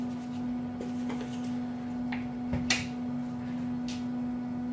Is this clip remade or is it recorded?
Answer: recorded